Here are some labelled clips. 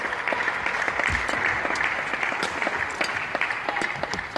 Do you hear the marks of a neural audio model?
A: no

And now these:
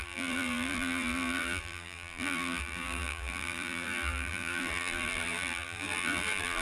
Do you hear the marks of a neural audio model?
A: yes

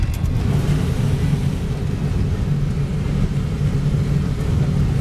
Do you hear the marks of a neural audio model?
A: no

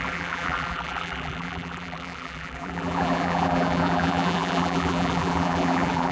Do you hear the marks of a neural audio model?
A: yes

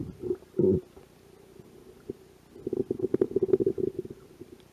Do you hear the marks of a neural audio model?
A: no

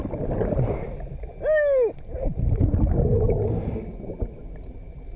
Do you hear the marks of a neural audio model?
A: no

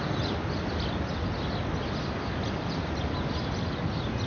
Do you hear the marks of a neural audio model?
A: no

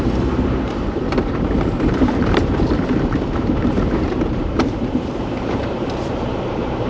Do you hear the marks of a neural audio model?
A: yes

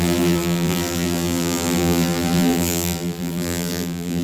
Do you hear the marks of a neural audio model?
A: yes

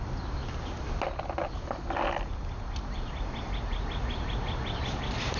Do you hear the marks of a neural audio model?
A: no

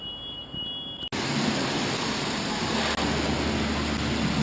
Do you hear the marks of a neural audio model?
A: no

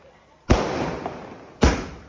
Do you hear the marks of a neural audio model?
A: no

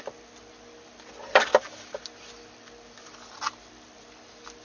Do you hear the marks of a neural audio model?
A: no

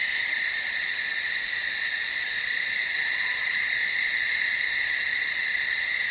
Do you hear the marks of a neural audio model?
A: no